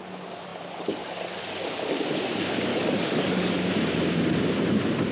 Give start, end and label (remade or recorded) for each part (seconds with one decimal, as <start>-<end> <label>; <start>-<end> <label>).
0.0-2.7 recorded; 2.7-3.5 remade; 3.5-5.1 recorded